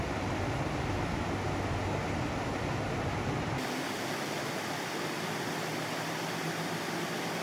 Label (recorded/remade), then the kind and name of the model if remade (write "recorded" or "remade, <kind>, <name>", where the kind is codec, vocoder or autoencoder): recorded